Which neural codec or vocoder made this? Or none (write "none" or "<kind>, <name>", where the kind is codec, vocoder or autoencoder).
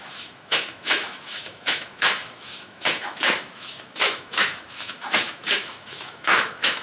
autoencoder, DAC-VAE